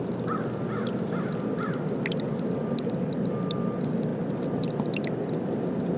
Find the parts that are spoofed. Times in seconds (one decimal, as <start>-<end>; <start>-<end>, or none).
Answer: none

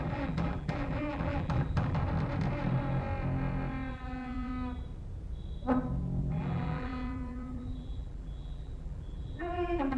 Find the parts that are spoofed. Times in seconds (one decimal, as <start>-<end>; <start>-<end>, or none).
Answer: 0.0-2.0; 3.9-4.5; 6.2-10.0

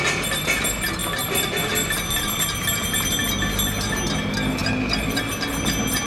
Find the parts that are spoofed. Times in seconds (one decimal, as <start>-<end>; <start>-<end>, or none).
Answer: 4.6-5.2